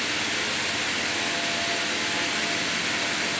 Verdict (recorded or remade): recorded